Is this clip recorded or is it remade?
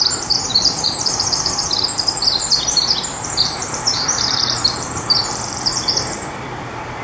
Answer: remade